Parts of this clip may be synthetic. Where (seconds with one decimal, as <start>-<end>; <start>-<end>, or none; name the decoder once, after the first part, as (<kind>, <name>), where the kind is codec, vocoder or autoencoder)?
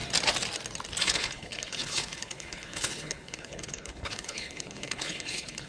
1.0-5.7 (codec, HILCodec)